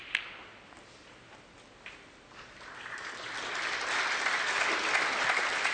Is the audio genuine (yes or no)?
yes